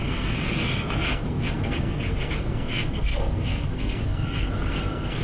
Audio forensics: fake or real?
fake